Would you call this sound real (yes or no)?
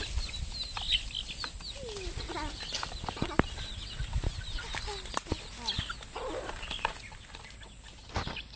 yes